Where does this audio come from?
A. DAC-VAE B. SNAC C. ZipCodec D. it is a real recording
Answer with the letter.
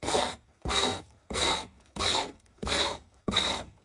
B